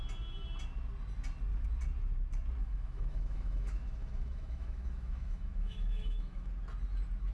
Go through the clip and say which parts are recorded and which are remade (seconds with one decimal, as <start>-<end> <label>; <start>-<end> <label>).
0.0-2.6 recorded; 2.6-6.5 remade; 6.5-7.3 recorded